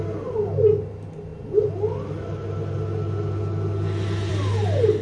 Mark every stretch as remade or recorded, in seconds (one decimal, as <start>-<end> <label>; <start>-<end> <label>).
0.0-5.0 recorded